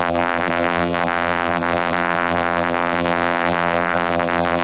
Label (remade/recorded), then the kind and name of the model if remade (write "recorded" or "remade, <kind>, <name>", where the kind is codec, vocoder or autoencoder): remade, vocoder, BigVGAN v2